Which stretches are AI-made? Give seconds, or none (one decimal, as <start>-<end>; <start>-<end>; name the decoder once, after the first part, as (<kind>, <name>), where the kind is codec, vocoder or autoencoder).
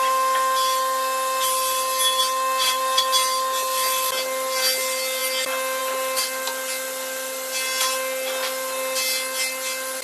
none